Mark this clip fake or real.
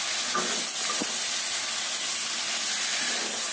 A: real